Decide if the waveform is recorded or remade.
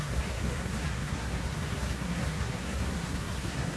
remade